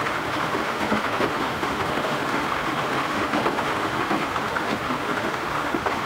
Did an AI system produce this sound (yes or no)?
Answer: yes